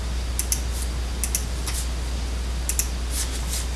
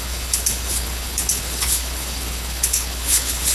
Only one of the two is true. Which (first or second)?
first